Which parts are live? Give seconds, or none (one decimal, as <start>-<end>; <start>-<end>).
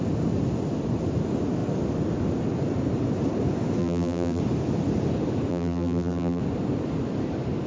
0.0-3.8; 4.4-5.5; 6.4-7.7